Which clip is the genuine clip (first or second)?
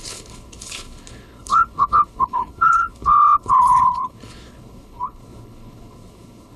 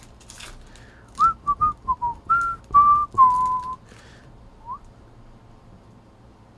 second